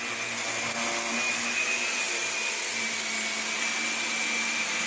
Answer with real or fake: real